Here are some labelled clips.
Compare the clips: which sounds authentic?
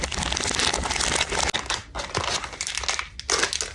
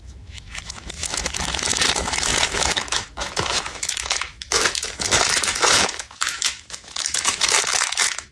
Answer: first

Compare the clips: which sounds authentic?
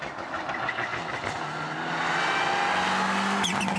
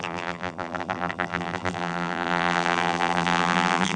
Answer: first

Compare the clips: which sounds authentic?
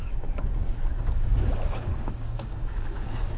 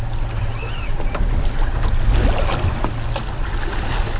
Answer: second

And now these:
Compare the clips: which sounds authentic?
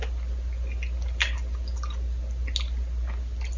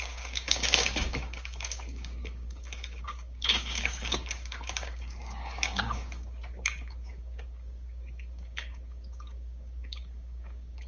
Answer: first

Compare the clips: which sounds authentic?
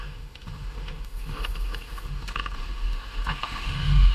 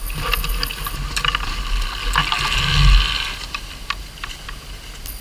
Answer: second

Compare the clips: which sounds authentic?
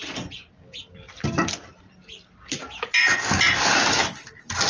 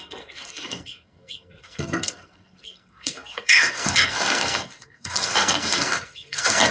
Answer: first